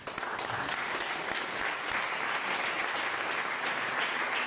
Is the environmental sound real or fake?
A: real